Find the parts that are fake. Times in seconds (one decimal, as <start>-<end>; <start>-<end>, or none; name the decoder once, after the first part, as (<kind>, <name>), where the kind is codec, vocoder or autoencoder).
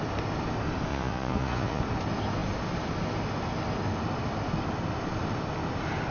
0.9-1.8 (vocoder, Vocos)